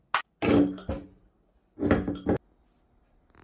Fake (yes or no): no